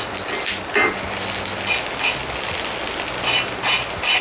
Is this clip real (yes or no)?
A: yes